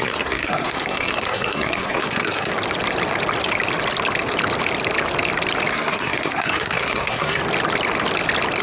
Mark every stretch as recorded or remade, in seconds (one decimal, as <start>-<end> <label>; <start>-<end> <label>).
0.0-2.5 remade; 2.5-5.7 recorded; 5.7-7.4 remade; 7.4-8.6 recorded